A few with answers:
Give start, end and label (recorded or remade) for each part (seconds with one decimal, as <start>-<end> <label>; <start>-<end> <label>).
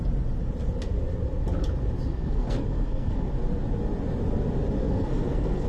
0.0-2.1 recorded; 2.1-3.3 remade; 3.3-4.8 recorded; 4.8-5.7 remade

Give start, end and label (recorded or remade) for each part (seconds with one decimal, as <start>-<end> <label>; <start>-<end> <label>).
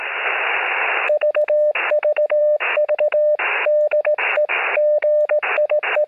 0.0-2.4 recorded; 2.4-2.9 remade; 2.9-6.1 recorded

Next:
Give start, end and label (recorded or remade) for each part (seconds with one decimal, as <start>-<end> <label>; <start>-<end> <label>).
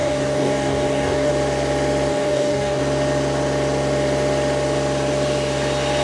0.0-1.3 remade; 1.3-2.1 recorded; 2.1-2.8 remade; 2.8-6.0 recorded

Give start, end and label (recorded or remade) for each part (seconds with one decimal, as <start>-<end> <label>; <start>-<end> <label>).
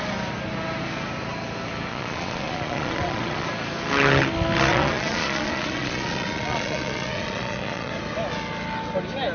0.0-1.9 recorded; 1.9-3.5 remade; 3.5-4.7 recorded; 4.7-7.9 remade; 7.9-9.3 recorded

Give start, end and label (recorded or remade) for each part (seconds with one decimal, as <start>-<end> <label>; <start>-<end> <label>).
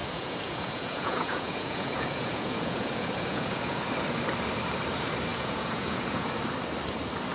0.0-3.9 remade; 3.9-5.3 recorded; 5.3-6.4 remade; 6.4-7.3 recorded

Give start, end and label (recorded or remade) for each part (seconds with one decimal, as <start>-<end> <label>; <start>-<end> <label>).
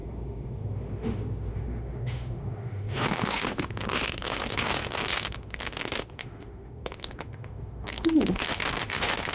0.0-9.3 remade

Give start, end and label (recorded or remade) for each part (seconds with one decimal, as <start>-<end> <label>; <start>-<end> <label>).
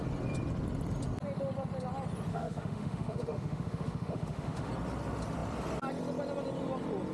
0.0-2.3 recorded; 2.3-4.7 remade; 4.7-7.1 recorded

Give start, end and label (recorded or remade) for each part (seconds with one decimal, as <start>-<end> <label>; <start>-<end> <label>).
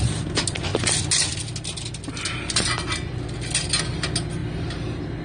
0.0-5.2 recorded